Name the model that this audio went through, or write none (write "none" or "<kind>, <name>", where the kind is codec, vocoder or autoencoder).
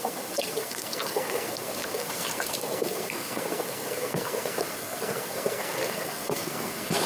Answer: codec, SNAC